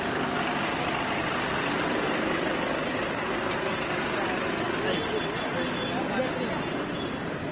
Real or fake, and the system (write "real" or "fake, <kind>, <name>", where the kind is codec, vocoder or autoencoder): real